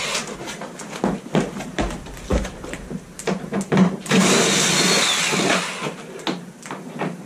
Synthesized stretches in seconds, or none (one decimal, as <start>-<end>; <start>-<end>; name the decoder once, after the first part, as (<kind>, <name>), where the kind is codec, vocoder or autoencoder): 2.3-4.2 (vocoder, BigVGAN v2)